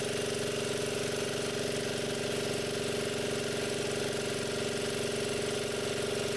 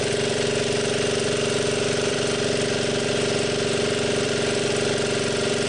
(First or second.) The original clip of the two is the first